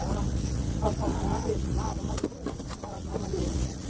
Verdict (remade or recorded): remade